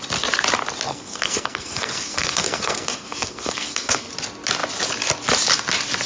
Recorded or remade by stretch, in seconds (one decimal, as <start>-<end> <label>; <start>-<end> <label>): 0.0-0.9 recorded; 0.9-4.1 remade; 4.1-6.1 recorded